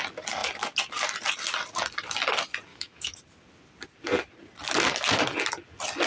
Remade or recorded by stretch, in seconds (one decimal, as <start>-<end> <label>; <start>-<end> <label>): 0.0-2.7 recorded; 2.7-3.2 remade; 3.2-6.1 recorded

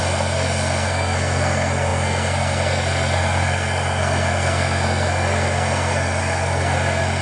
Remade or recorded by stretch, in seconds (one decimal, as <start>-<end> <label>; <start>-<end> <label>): 0.0-7.2 remade

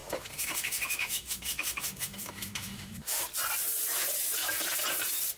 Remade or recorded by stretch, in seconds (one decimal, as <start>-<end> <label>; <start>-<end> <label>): 0.0-3.2 remade; 3.2-5.4 recorded

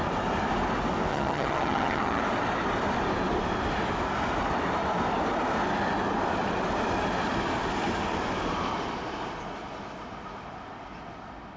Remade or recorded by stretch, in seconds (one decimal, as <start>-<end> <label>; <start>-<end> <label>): 0.0-1.1 recorded; 1.1-2.2 remade; 2.2-11.6 recorded

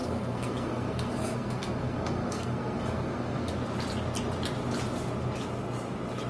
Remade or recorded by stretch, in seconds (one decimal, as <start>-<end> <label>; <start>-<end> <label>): 0.0-3.5 remade; 3.5-6.3 recorded

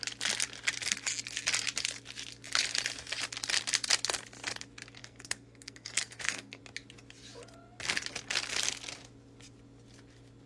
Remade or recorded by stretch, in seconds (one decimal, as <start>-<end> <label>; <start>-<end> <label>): 0.0-5.0 recorded; 5.0-6.6 remade; 6.6-10.5 recorded